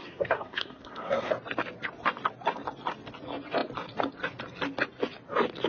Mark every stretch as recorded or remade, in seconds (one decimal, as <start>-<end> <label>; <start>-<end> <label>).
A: 0.0-1.3 remade; 1.3-5.7 recorded